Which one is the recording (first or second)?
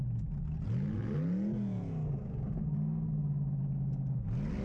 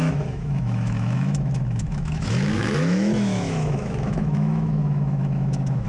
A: first